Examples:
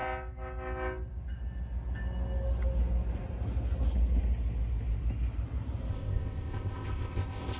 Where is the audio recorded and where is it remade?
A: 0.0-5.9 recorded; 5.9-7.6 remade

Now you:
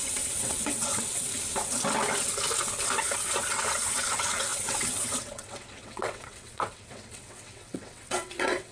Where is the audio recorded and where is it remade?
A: 0.0-1.3 remade; 1.3-3.0 recorded; 3.0-8.7 remade